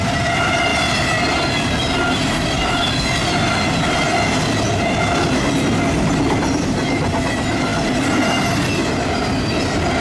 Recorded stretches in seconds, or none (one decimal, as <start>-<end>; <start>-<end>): 0.0-10.0